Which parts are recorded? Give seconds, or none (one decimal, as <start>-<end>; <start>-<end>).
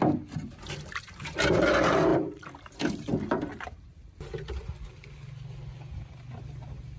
0.0-7.0